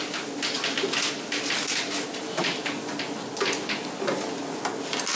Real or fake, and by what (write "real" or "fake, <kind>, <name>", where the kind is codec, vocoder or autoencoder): real